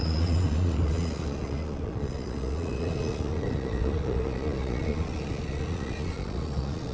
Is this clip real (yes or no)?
no